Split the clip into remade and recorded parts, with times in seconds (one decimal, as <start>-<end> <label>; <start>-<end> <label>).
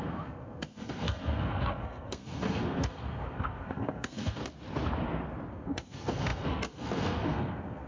0.0-4.4 remade; 4.4-5.5 recorded; 5.5-7.9 remade